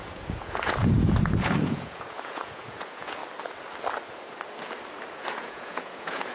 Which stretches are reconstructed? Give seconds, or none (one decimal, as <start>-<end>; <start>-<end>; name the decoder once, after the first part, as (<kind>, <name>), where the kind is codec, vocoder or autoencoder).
0.0-3.2 (vocoder, Vocos); 5.2-6.3